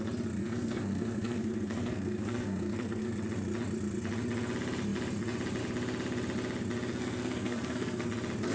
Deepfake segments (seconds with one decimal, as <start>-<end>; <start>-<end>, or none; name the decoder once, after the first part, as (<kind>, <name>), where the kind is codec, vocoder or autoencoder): 0.4-3.1 (codec, SNAC); 6.9-8.1